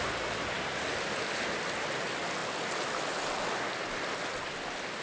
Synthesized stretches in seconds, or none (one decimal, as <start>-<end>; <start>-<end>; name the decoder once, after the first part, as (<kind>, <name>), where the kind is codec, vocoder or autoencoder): none